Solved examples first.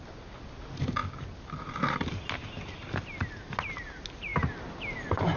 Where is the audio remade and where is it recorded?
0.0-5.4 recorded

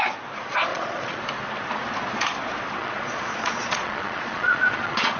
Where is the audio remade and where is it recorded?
0.0-0.7 recorded; 0.7-1.2 remade; 1.2-2.8 recorded; 2.8-5.2 remade

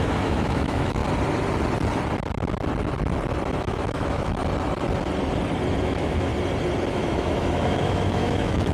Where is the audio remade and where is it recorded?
0.0-1.0 remade; 1.0-3.6 recorded; 3.6-4.4 remade; 4.4-5.8 recorded; 5.8-6.3 remade; 6.3-6.9 recorded; 6.9-8.7 remade

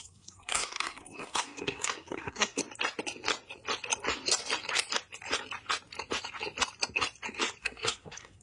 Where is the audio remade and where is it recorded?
0.0-2.6 remade; 2.6-7.6 recorded; 7.6-8.4 remade

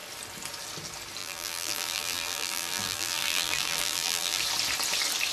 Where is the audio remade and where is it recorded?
0.0-1.2 recorded; 1.2-4.4 remade; 4.4-5.3 recorded

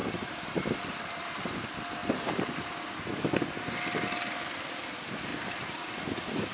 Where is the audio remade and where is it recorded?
0.0-1.4 remade; 1.4-2.0 recorded; 2.0-3.2 remade; 3.2-5.3 recorded; 5.3-5.9 remade; 5.9-6.5 recorded

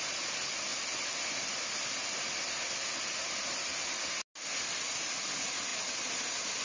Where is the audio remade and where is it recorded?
0.0-6.6 recorded